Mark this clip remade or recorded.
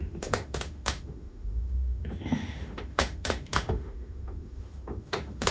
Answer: remade